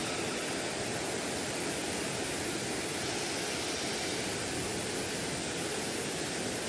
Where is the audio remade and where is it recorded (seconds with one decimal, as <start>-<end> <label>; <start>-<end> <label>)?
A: 0.0-1.8 recorded; 1.8-4.8 remade; 4.8-6.7 recorded